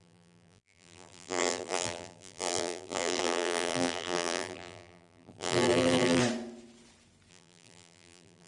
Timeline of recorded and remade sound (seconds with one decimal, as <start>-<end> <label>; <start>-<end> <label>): 0.0-6.2 remade; 6.2-7.3 recorded; 7.3-8.5 remade